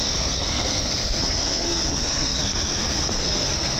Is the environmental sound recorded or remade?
remade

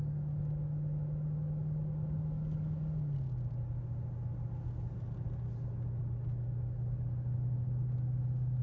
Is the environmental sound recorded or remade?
recorded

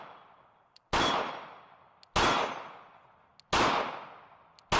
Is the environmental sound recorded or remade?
recorded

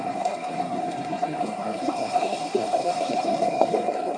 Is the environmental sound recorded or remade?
remade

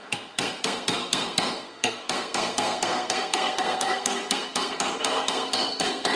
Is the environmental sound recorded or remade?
remade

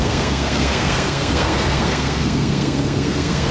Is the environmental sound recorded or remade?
remade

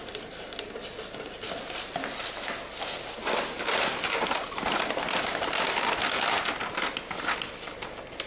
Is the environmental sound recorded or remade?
recorded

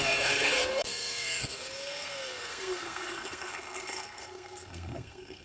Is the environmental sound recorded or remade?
remade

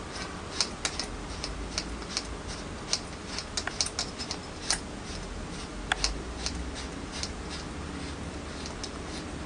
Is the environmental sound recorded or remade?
recorded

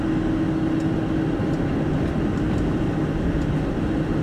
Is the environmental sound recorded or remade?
recorded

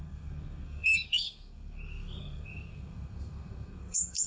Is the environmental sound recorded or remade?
remade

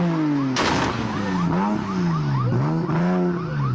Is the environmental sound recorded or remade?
recorded